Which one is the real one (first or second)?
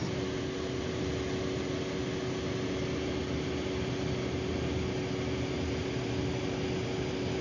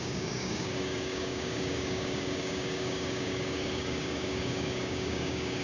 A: first